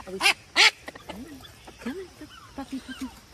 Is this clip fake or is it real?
real